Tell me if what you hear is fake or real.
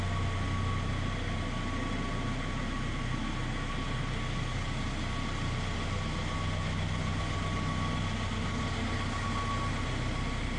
real